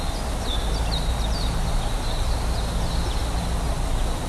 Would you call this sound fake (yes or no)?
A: no